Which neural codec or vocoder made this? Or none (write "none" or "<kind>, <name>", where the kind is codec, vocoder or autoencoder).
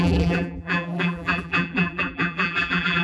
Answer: vocoder, BigVGAN v2